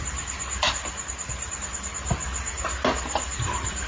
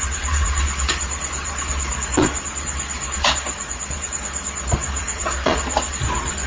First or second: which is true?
first